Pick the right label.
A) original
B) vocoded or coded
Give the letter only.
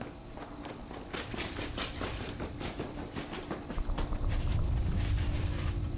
B